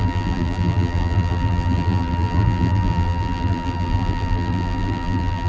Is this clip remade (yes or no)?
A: yes